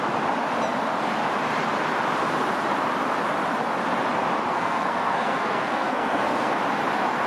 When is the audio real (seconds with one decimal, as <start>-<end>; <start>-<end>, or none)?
0.0-4.5; 6.6-7.3